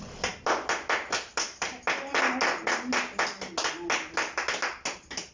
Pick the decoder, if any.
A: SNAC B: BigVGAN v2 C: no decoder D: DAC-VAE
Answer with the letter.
C